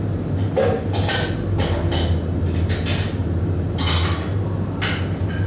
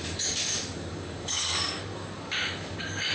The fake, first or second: second